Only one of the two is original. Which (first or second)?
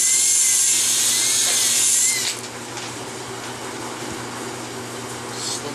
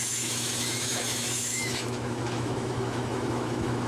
first